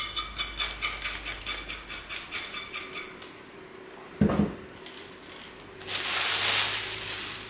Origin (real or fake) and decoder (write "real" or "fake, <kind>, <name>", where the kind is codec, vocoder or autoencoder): real